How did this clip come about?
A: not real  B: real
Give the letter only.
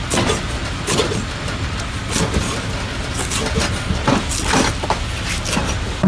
B